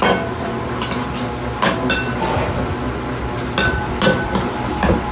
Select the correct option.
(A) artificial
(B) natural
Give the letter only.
B